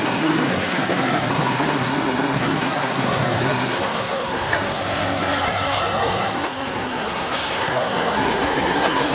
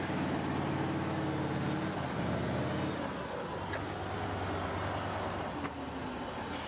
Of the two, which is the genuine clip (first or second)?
second